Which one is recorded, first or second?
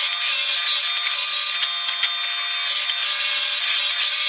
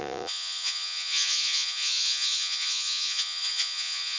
first